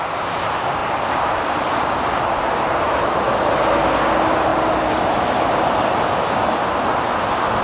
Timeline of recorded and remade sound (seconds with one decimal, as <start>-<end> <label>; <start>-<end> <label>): 0.0-0.8 recorded; 0.8-3.3 remade; 3.3-4.5 recorded; 4.5-5.8 remade; 5.8-7.6 recorded